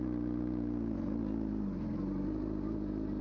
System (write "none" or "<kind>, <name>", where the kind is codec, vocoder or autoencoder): none